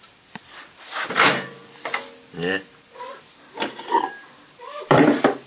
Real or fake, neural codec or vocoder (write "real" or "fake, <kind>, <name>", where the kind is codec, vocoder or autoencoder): fake, vocoder, BigVGAN v2